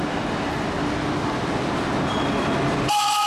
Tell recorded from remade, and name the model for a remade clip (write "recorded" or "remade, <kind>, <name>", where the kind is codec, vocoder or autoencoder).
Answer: recorded